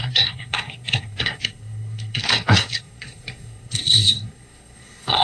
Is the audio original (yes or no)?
no